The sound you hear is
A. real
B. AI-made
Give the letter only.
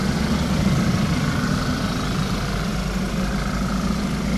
A